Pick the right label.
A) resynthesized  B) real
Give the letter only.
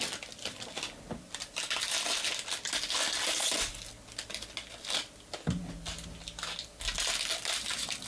B